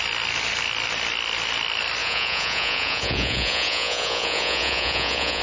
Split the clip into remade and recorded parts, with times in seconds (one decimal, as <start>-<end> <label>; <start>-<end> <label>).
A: 0.0-2.0 recorded; 2.0-5.4 remade